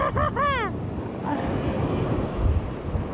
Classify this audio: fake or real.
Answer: real